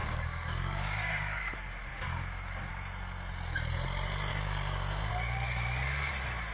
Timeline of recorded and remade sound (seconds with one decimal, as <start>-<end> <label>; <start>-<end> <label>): 0.0-1.5 remade; 1.5-1.9 recorded; 1.9-2.7 remade; 2.7-4.3 recorded; 4.3-5.1 remade; 5.1-6.5 recorded